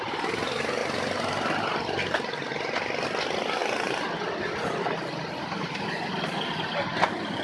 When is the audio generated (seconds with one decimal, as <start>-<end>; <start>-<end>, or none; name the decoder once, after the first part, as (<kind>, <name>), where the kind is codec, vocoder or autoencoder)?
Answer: none